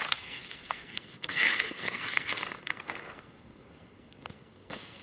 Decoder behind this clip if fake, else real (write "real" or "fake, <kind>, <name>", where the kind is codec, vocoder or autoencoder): fake, codec, SNAC